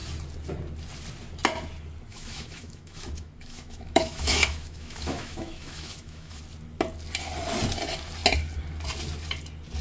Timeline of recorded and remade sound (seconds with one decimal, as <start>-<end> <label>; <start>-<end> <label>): 0.0-2.1 recorded; 2.1-6.4 remade; 6.4-9.8 recorded